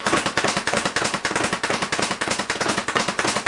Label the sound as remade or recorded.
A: remade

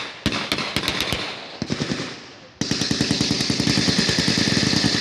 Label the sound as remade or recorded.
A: recorded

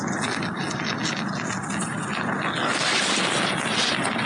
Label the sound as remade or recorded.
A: recorded